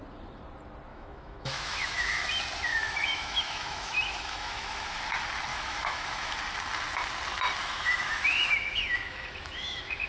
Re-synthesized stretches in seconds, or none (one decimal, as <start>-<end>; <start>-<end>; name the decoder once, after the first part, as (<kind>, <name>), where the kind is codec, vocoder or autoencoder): 0.9-2.3 (autoencoder, DAC-VAE); 2.7-5.0; 5.5-6.3; 7.6-10.1